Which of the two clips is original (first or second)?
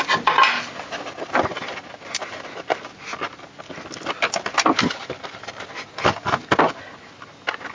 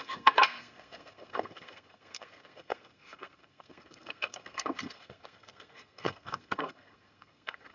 first